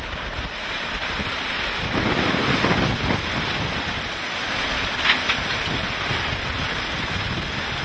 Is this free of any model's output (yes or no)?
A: yes